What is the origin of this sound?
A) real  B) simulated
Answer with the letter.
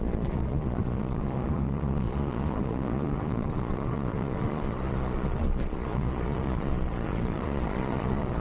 B